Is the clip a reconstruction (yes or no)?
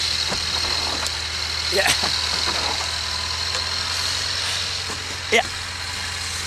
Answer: no